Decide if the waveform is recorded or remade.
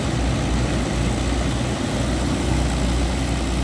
recorded